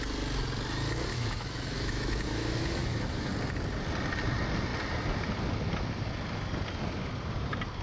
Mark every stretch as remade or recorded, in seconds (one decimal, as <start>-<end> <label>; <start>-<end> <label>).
0.0-1.1 recorded; 1.1-3.3 remade; 3.3-7.8 recorded